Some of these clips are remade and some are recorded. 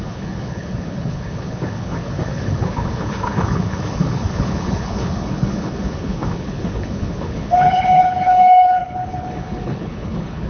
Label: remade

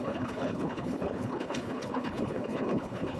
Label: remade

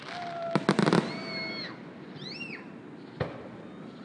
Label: recorded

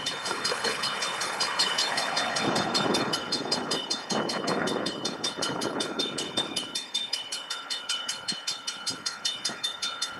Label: remade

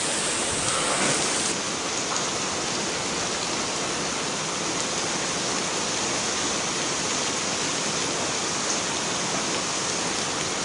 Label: recorded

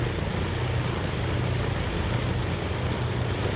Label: recorded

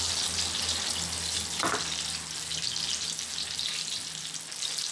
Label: recorded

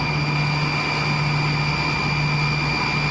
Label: recorded